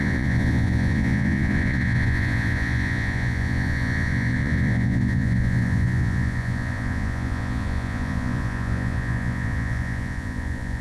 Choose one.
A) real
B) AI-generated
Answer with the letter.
B